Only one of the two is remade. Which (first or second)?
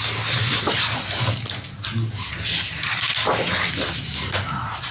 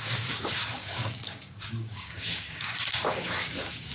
second